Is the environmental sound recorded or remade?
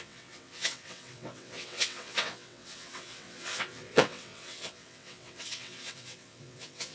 remade